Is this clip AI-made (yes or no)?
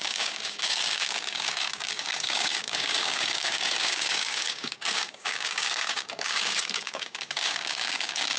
yes